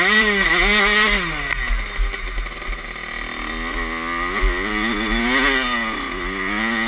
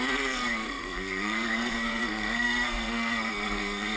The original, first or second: first